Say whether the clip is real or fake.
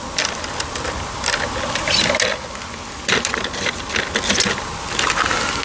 real